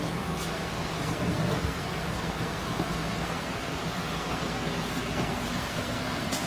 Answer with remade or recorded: remade